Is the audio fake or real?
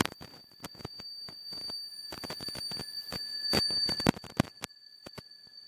real